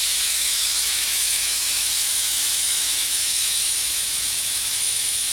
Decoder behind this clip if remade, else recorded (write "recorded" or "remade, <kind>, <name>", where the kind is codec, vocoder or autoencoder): remade, autoencoder, DAC-VAE